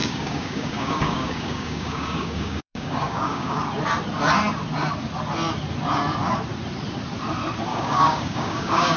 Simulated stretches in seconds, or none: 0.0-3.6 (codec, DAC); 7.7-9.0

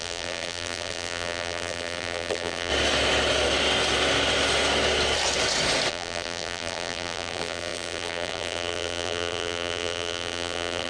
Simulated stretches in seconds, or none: 0.0-2.7 (vocoder, BigVGAN v2); 5.9-10.9

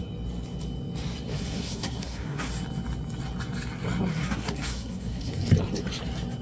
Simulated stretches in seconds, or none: 1.3-2.5 (codec, SNAC); 4.1-5.3

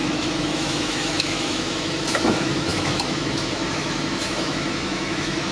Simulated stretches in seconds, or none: 0.0-5.5 (autoencoder, DAC-VAE)

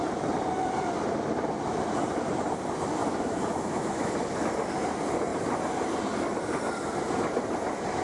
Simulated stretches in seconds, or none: 3.0-4.1 (autoencoder, DAC-VAE)